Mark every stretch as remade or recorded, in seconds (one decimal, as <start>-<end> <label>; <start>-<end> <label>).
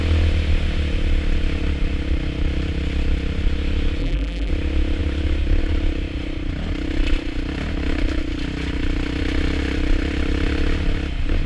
0.0-4.0 recorded; 4.0-4.5 remade; 4.5-11.5 recorded